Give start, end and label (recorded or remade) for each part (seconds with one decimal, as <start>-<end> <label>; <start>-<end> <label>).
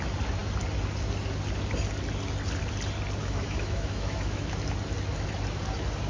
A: 0.0-3.2 recorded; 3.2-4.5 remade; 4.5-6.1 recorded